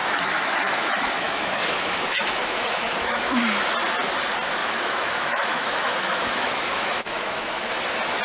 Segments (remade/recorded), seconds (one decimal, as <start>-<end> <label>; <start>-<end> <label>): 0.0-3.4 remade; 3.4-4.6 recorded; 4.6-7.7 remade; 7.7-8.2 recorded